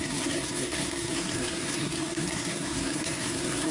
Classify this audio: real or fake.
fake